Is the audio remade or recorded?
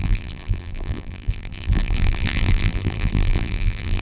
remade